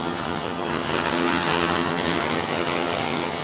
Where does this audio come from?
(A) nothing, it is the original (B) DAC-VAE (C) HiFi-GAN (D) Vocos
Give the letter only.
C